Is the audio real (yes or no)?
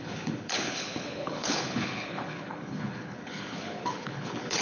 no